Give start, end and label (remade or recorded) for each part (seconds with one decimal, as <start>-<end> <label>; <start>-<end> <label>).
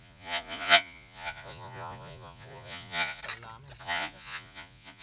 0.0-3.2 remade; 3.2-3.8 recorded; 3.8-5.0 remade